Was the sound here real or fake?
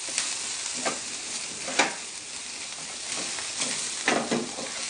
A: real